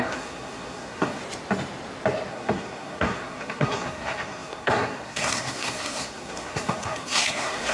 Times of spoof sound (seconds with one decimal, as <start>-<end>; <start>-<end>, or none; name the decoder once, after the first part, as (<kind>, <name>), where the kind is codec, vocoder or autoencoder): 0.0-1.2 (codec, SNAC); 2.3-7.7